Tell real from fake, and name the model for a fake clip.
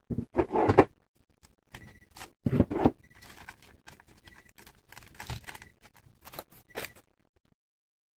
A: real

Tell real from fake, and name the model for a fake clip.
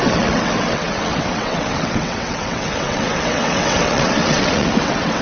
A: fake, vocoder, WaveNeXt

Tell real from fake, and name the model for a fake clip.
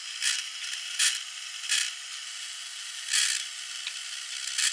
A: real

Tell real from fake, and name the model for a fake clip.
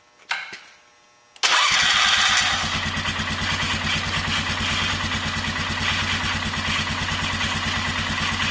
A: real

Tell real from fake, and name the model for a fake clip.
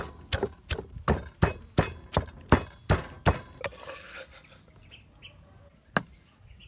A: real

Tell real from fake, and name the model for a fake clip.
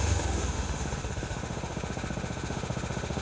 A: fake, autoencoder, DAC-VAE